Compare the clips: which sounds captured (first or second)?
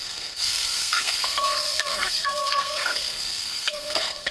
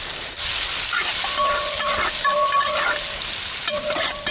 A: second